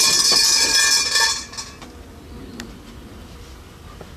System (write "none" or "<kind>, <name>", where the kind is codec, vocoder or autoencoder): none